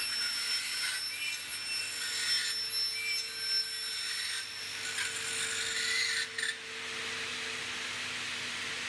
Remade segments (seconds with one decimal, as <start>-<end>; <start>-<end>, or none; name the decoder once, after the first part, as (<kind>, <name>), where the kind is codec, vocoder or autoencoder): none